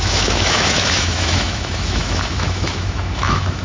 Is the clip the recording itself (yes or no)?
no